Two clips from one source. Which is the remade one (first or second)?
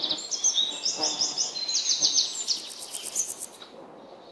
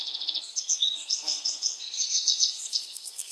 second